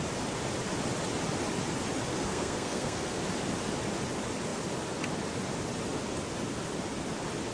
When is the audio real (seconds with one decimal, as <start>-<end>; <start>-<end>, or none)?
0.0-2.1; 3.2-7.5